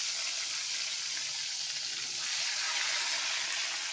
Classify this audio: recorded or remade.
recorded